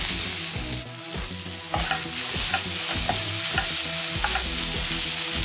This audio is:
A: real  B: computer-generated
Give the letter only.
A